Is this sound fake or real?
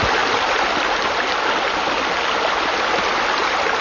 real